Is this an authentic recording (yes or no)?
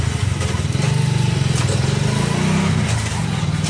yes